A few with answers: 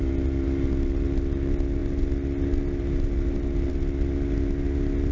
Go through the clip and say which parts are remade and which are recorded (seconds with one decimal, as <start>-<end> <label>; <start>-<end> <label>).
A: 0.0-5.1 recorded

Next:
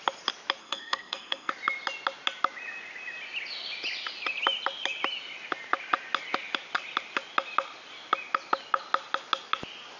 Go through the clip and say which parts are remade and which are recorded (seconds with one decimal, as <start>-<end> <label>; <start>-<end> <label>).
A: 0.0-0.6 recorded; 0.6-1.5 remade; 1.5-10.0 recorded

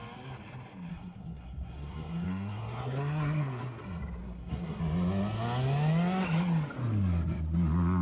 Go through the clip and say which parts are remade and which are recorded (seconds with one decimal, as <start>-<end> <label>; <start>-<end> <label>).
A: 0.0-0.9 recorded; 0.9-3.8 remade; 3.8-4.2 recorded; 4.2-4.8 remade; 4.8-8.0 recorded

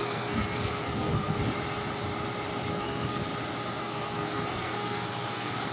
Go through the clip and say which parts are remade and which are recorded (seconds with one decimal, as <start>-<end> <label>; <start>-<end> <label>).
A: 0.0-1.4 remade; 1.4-2.7 recorded; 2.7-3.2 remade; 3.2-3.8 recorded; 3.8-5.7 remade

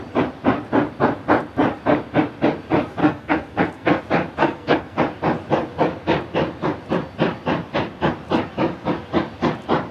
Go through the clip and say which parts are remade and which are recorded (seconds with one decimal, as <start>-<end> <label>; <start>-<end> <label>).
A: 0.0-3.0 recorded; 3.0-4.0 remade; 4.0-4.4 recorded; 4.4-5.0 remade; 5.0-9.9 recorded

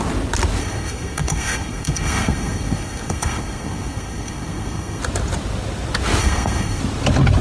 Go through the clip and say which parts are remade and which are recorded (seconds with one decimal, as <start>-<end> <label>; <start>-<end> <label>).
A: 0.0-0.6 recorded; 0.6-5.0 remade; 5.0-6.2 recorded; 6.2-6.8 remade; 6.8-7.4 recorded

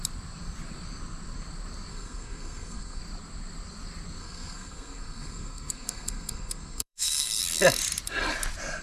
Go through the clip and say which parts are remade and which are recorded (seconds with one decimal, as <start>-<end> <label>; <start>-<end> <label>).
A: 0.0-1.9 recorded; 1.9-3.0 remade; 3.0-4.2 recorded; 4.2-7.4 remade; 7.4-8.8 recorded